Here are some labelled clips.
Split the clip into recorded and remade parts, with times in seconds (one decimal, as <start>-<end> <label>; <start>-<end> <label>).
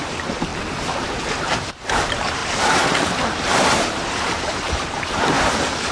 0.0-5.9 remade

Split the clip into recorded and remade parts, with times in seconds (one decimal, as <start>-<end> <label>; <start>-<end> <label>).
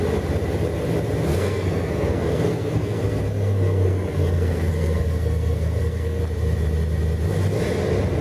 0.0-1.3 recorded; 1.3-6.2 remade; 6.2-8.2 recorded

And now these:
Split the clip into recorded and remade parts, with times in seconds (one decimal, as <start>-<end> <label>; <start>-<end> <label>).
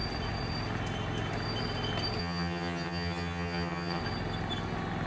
0.0-2.2 recorded; 2.2-4.0 remade; 4.0-5.1 recorded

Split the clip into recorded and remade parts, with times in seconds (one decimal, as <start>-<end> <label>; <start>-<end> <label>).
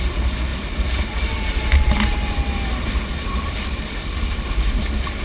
0.0-0.5 recorded; 0.5-3.6 remade; 3.6-5.2 recorded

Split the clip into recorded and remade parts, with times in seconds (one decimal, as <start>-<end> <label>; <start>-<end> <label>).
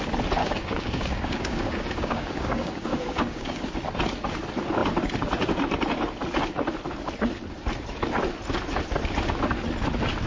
0.0-0.4 recorded; 0.4-3.7 remade; 3.7-10.3 recorded